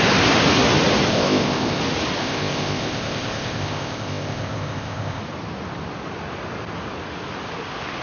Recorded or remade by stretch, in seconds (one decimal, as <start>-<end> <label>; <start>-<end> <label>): 0.0-1.1 recorded; 1.1-1.8 remade; 1.8-2.2 recorded; 2.2-5.2 remade; 5.2-8.0 recorded